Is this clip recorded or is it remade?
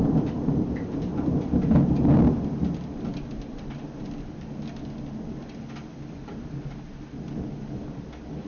recorded